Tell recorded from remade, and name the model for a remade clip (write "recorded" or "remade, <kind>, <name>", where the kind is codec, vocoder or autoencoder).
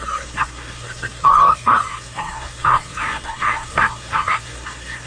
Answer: remade, codec, SNAC